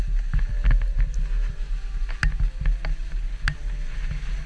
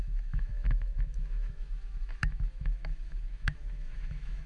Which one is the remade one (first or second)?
second